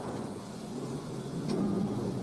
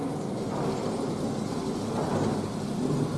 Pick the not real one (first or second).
first